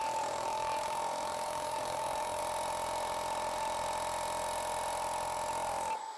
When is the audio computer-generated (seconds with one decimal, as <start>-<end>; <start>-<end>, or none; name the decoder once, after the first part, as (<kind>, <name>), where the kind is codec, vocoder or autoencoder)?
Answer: 0.0-2.4 (codec, DAC)